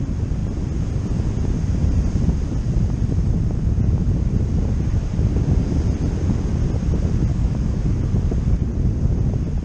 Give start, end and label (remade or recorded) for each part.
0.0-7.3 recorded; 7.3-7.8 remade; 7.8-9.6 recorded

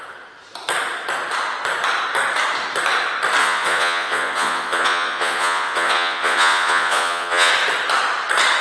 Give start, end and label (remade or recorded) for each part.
0.0-3.4 recorded; 3.4-7.5 remade; 7.5-8.6 recorded

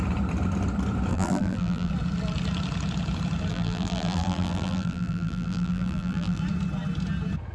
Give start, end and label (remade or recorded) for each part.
0.0-1.1 recorded; 1.1-1.9 remade; 1.9-3.5 recorded; 3.5-6.4 remade; 6.4-7.5 recorded

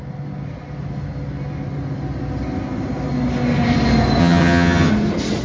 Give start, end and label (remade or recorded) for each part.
0.0-4.2 recorded; 4.2-4.9 remade; 4.9-5.4 recorded

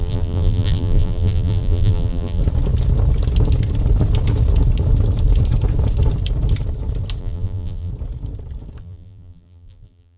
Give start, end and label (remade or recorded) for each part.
0.0-2.4 remade; 2.4-7.2 recorded; 7.2-7.9 remade; 7.9-8.8 recorded; 8.8-10.2 remade

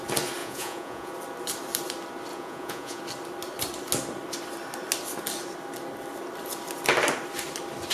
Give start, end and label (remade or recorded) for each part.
0.0-0.4 recorded; 0.4-1.1 remade; 1.1-2.3 recorded; 2.3-3.0 remade; 3.0-7.9 recorded

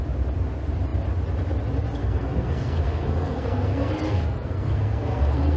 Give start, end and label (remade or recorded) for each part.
0.0-2.0 recorded; 2.0-5.6 remade

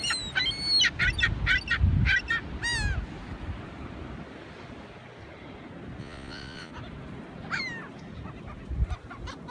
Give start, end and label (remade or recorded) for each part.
0.0-6.0 recorded; 6.0-6.7 remade; 6.7-9.5 recorded